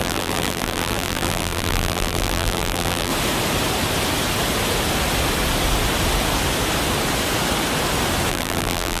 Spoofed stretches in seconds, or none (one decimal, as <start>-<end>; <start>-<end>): 0.0-3.1; 8.3-9.0